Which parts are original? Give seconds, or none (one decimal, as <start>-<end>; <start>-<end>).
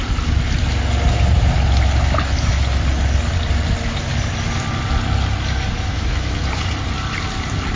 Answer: 0.0-5.9; 6.4-7.8